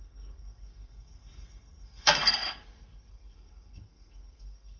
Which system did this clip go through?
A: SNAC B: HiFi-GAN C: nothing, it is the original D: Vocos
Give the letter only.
A